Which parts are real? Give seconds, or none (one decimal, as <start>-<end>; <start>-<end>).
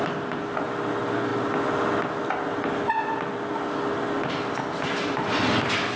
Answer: 0.0-6.0